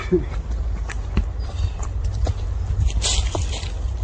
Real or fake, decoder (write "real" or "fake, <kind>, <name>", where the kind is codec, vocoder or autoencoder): real